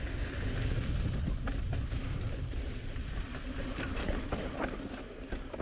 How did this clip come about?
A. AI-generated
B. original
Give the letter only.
B